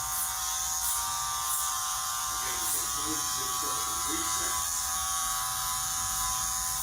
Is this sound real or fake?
real